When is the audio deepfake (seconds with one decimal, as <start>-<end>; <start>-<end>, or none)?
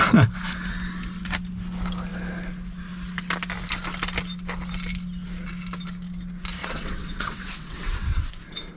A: 6.6-8.3